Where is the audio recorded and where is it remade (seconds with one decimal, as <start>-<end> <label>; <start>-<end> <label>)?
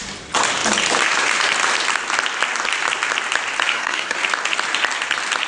0.0-3.7 recorded; 3.7-4.2 remade; 4.2-5.5 recorded